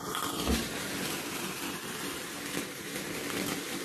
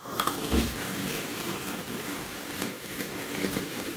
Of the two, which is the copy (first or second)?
second